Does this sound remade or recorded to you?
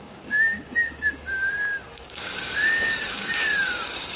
remade